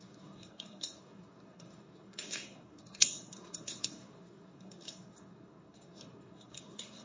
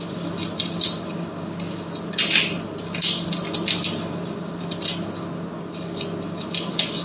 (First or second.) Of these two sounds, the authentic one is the second